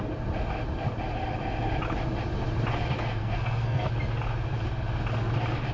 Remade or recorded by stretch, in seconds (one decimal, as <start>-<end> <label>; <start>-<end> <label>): 0.0-3.2 recorded; 3.2-3.9 remade; 3.9-5.7 recorded